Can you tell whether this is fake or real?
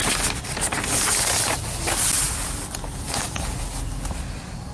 real